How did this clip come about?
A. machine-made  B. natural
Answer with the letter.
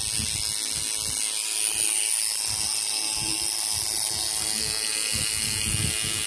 B